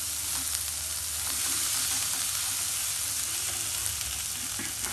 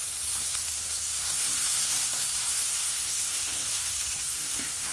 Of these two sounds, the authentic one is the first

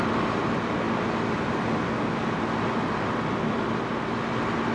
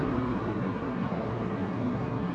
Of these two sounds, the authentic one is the first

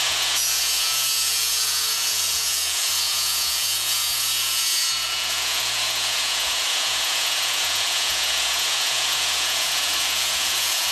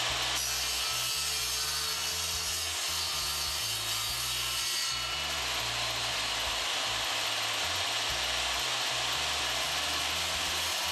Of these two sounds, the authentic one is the second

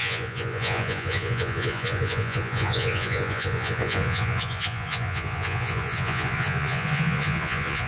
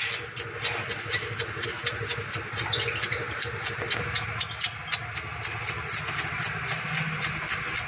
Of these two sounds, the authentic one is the second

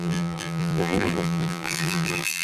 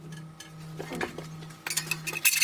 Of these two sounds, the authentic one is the second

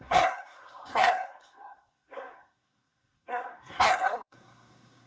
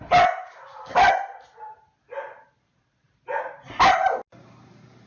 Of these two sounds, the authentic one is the second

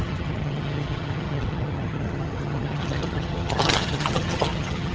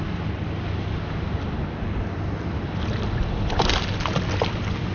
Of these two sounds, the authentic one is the second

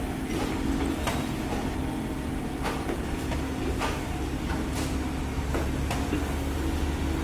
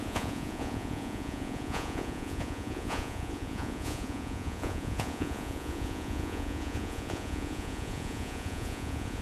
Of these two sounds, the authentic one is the first